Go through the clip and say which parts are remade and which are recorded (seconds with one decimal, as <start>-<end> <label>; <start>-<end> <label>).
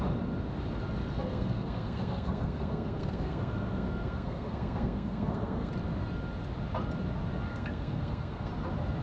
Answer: 0.0-1.3 recorded; 1.3-5.7 remade; 5.7-7.5 recorded; 7.5-8.5 remade; 8.5-9.0 recorded